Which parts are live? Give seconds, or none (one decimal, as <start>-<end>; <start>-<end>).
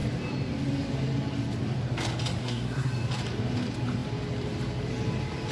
0.0-2.4; 2.9-5.5